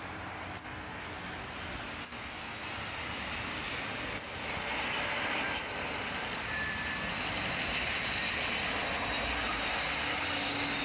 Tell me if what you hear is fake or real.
real